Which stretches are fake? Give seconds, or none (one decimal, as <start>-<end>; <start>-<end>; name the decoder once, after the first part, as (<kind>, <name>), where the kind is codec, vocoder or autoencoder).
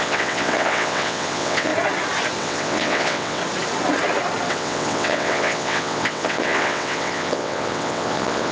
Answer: 0.0-1.7 (vocoder, WaveNeXt); 2.4-3.4; 4.5-8.5